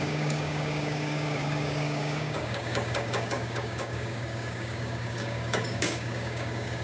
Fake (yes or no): yes